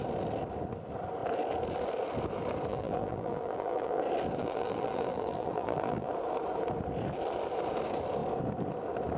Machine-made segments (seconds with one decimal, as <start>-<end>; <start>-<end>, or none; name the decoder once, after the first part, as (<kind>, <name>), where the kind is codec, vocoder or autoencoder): 2.7-4.0 (vocoder, BigVGAN v2); 4.4-6.1